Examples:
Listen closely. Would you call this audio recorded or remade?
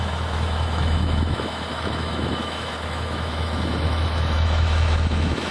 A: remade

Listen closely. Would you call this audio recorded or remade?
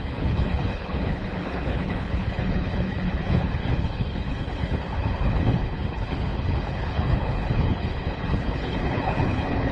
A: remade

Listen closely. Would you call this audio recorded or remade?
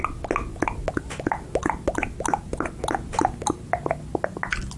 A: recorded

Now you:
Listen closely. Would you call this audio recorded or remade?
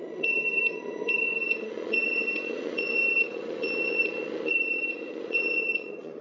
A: remade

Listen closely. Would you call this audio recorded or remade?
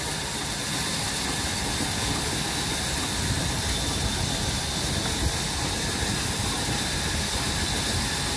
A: recorded